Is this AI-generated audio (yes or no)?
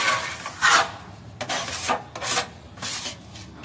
no